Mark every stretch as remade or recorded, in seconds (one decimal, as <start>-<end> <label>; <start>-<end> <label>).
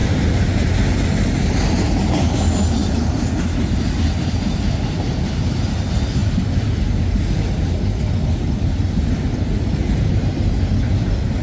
0.0-11.4 recorded